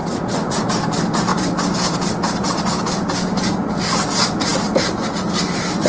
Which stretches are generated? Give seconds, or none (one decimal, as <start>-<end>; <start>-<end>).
0.0-0.6